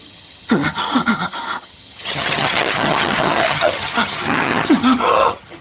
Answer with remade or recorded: remade